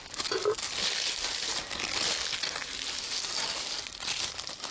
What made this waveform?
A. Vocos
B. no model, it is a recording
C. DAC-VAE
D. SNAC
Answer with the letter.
B